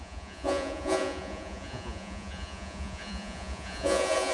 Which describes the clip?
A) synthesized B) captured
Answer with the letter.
A